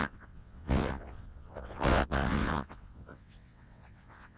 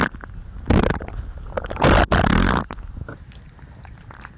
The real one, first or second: second